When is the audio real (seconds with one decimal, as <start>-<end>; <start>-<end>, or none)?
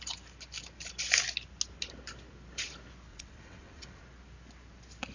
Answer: 0.0-3.1; 4.0-5.1